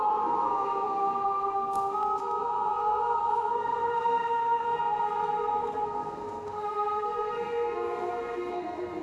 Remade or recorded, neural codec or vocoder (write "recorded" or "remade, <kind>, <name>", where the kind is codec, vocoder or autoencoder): remade, codec, SNAC